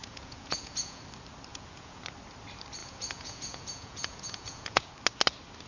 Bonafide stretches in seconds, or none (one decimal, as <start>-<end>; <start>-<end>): 1.0-1.5; 2.0-2.8; 4.9-5.7

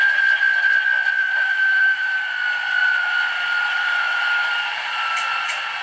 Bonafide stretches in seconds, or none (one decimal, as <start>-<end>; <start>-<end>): 0.0-1.2; 2.1-2.8; 5.1-5.8

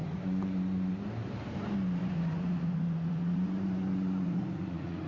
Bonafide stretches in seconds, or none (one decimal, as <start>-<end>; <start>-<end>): 0.9-2.0

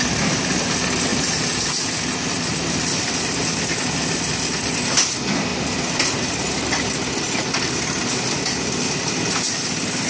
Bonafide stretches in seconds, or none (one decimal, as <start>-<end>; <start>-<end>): 0.0-1.1; 2.0-2.5; 3.3-10.1

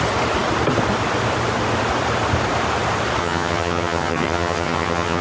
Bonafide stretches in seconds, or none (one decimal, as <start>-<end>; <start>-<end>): 0.0-3.2